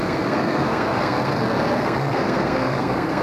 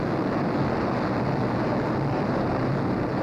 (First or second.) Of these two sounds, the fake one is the first